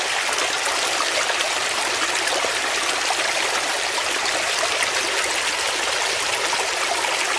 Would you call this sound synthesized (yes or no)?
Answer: no